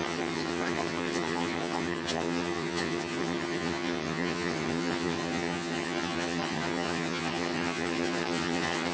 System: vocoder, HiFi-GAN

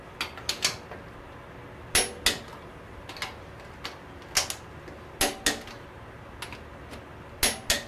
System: none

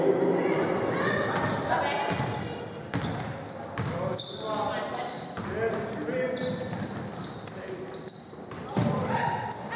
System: none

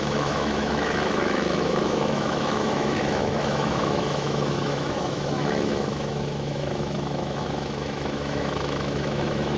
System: autoencoder, DAC-VAE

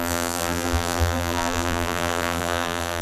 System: vocoder, BigVGAN v2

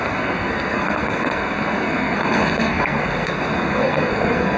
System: codec, SNAC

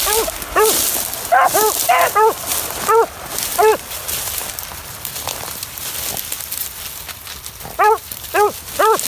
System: none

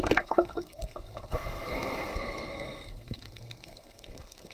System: codec, SNAC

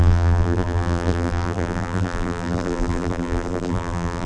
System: vocoder, BigVGAN v2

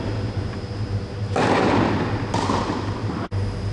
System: none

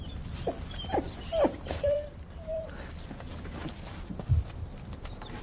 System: vocoder, BigVGAN v2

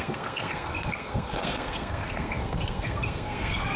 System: codec, SNAC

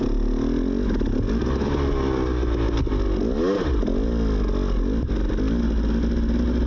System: none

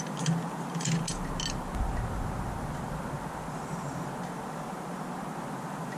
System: none